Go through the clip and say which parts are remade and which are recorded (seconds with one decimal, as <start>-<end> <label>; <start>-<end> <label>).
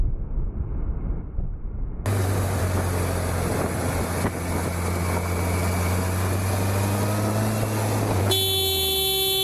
0.0-2.1 recorded; 2.1-2.6 remade; 2.6-9.4 recorded